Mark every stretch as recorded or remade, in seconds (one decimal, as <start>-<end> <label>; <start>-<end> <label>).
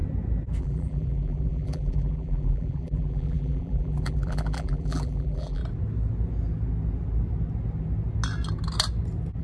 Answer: 0.0-0.6 recorded; 0.6-5.6 remade; 5.6-9.4 recorded